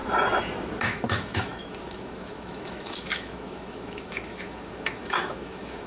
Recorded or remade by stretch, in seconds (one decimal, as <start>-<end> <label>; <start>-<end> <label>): 0.0-0.8 recorded; 0.8-5.9 remade